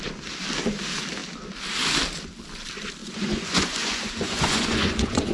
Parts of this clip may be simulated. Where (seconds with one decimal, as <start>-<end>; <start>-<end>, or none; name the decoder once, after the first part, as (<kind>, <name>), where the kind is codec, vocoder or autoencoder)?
3.0-5.3 (vocoder, Vocos)